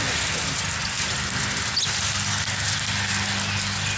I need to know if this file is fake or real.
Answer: real